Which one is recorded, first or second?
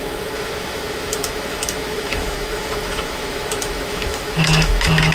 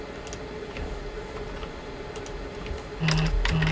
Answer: second